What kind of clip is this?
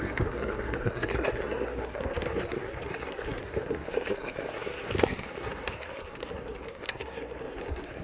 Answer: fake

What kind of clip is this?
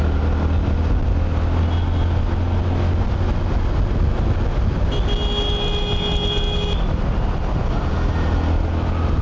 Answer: real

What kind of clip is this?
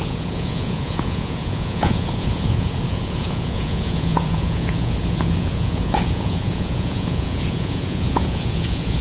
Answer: fake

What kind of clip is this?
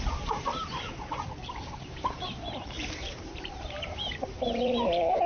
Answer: fake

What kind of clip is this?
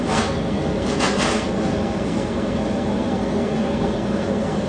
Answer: fake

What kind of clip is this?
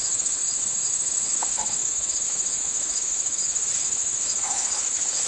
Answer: fake